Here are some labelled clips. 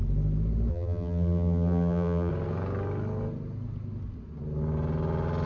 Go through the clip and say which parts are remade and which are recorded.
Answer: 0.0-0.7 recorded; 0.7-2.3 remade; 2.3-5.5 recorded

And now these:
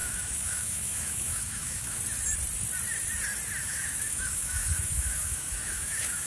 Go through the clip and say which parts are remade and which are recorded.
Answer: 0.0-2.0 remade; 2.0-3.6 recorded; 3.6-6.3 remade

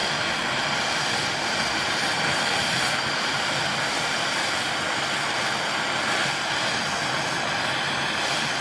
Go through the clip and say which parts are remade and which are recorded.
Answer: 0.0-8.6 recorded